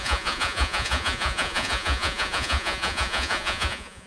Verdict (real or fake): fake